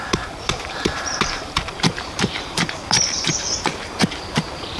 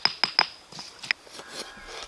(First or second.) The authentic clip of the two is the second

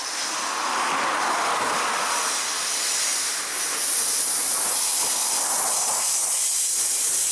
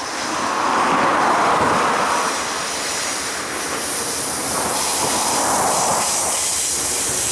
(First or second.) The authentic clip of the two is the first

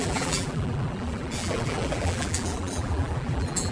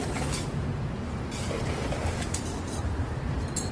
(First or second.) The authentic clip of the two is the second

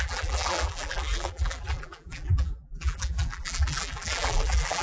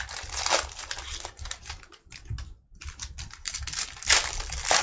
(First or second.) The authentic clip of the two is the second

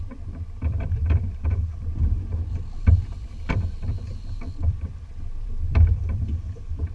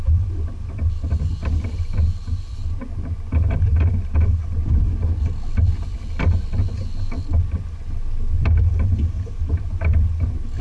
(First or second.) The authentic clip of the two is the second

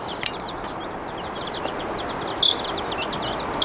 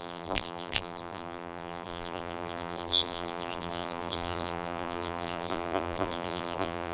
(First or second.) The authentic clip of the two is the first